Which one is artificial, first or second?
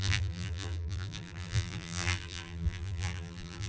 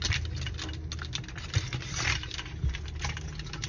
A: first